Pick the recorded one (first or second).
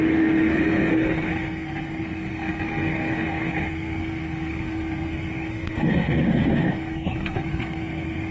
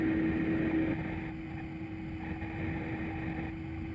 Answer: second